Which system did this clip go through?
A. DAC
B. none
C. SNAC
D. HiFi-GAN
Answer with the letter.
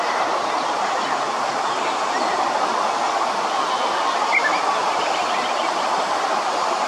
B